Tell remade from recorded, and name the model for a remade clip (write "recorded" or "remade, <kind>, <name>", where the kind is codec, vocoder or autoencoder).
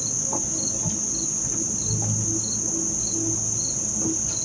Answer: recorded